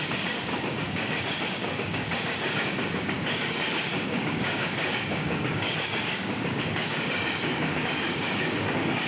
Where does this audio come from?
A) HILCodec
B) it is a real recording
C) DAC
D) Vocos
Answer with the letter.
C